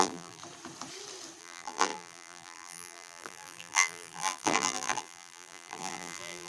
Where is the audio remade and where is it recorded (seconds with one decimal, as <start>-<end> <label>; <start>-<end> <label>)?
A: 0.0-0.4 remade; 0.4-1.4 recorded; 1.4-6.5 remade